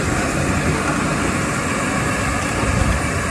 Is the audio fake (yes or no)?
no